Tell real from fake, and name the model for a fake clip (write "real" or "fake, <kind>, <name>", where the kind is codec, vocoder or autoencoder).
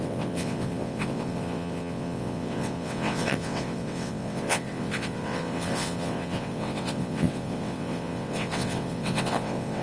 fake, vocoder, WaveNeXt